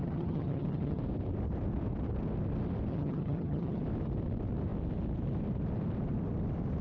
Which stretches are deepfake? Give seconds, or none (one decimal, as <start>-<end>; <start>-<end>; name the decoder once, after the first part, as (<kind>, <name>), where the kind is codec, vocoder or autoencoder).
0.0-1.0 (vocoder, HiFi-GAN); 2.9-3.8